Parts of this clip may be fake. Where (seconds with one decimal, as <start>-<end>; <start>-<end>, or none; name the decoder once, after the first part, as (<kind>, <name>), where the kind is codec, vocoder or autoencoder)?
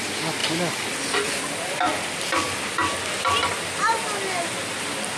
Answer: none